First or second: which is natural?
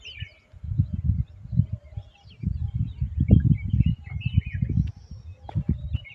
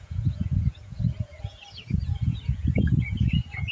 first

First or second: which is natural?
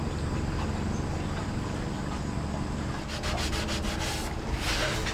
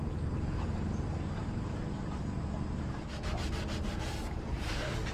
first